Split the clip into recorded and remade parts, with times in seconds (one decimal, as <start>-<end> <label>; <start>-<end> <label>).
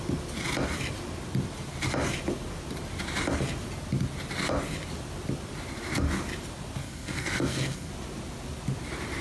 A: 0.0-6.8 recorded; 6.8-7.9 remade; 7.9-9.2 recorded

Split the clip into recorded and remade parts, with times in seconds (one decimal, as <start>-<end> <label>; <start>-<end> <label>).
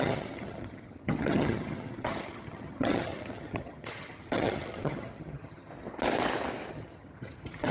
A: 0.0-5.7 remade; 5.7-6.7 recorded; 6.7-7.7 remade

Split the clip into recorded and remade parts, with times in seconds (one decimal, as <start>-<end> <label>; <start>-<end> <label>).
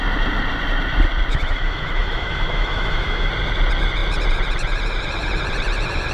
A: 0.0-1.3 recorded; 1.3-3.3 remade; 3.3-6.1 recorded